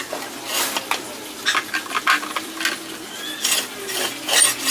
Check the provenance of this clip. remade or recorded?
recorded